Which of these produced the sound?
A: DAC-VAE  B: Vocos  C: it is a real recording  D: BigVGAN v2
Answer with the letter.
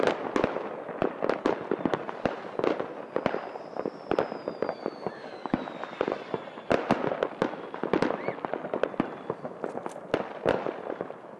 C